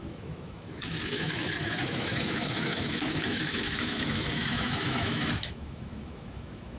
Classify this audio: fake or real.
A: fake